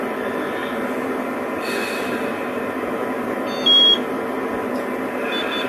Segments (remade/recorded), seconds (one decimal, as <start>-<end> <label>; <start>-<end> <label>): 0.0-5.7 recorded